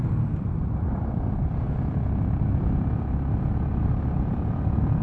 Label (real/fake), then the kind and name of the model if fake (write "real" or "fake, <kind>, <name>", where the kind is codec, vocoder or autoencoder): real